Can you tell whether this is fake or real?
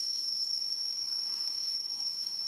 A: fake